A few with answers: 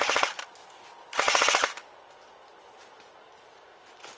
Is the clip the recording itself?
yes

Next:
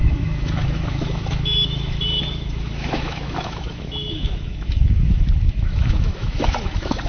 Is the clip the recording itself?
no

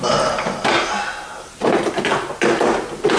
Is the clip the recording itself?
yes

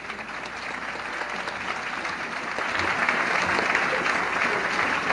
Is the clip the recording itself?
yes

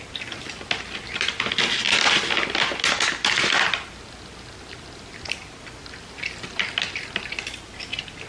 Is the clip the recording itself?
yes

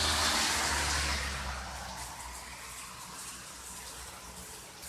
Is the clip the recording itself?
yes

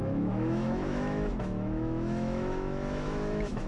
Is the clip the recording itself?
no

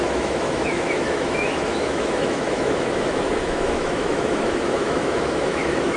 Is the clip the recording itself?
no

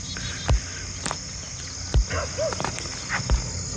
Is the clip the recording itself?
yes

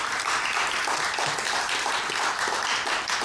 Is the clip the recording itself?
yes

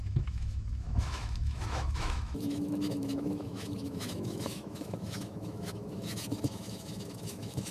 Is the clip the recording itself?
no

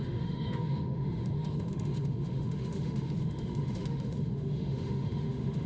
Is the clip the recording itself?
no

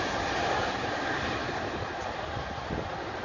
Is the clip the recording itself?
yes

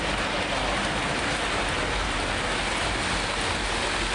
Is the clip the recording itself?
yes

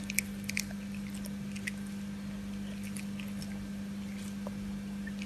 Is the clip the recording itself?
yes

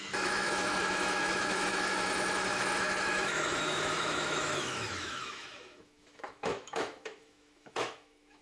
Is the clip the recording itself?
no